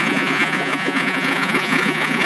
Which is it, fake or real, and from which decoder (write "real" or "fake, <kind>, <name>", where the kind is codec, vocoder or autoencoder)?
fake, vocoder, Vocos